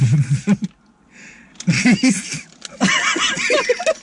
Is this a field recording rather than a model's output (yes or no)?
yes